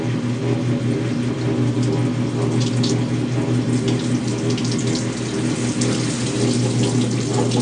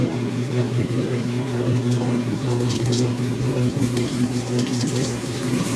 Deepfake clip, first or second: second